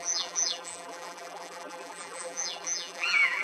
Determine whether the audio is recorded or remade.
remade